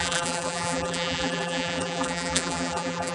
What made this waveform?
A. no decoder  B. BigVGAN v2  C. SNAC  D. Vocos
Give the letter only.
B